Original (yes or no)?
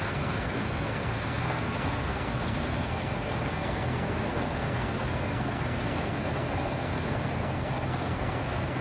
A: no